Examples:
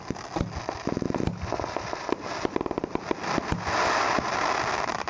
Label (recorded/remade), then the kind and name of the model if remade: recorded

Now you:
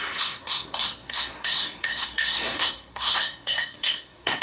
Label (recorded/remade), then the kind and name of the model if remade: remade, codec, SNAC